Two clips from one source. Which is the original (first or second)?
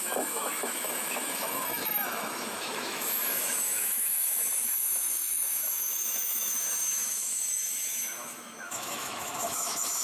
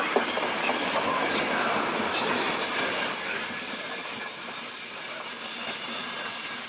second